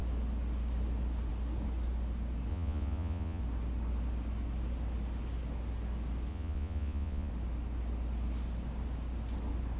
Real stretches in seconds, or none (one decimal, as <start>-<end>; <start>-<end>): 0.0-2.5; 3.4-6.3; 7.3-9.8